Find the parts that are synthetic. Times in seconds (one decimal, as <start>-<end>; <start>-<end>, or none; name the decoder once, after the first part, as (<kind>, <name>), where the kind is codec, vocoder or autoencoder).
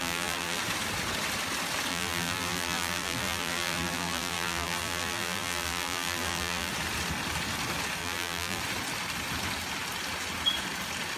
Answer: 0.0-0.6 (vocoder, BigVGAN v2); 1.9-6.7; 8.0-8.6